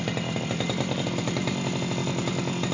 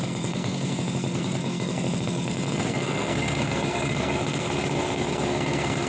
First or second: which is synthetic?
second